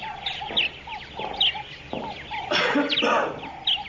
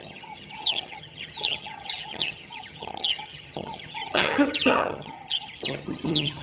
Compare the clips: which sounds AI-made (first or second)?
second